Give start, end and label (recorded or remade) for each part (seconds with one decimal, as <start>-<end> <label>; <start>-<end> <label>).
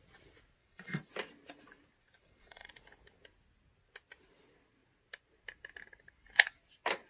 0.0-0.6 recorded; 0.6-1.1 remade; 1.1-2.2 recorded; 2.2-2.7 remade; 2.7-7.1 recorded